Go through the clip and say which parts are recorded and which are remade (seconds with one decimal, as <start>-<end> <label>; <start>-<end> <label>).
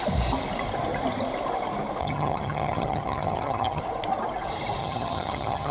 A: 0.0-2.0 recorded; 2.0-3.8 remade; 3.8-4.8 recorded; 4.8-5.7 remade